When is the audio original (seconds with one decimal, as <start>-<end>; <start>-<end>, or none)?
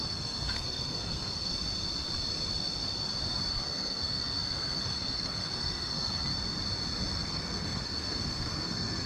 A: 1.5-3.5; 6.3-7.2